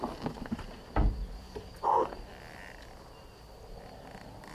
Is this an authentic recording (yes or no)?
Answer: yes